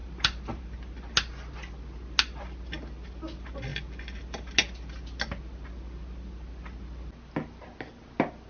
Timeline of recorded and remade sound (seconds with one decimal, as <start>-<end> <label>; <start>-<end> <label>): 0.0-8.5 recorded